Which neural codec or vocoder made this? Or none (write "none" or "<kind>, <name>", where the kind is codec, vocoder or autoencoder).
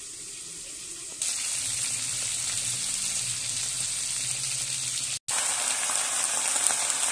none